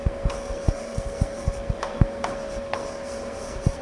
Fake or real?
fake